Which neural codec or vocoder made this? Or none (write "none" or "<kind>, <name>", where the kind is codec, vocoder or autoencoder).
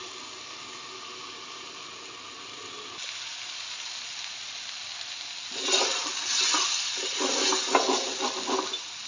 none